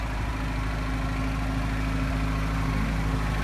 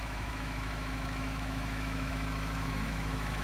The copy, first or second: second